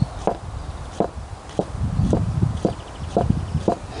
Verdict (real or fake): real